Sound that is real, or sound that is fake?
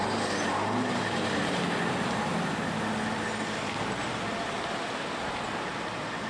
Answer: real